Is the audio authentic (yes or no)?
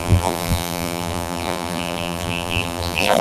no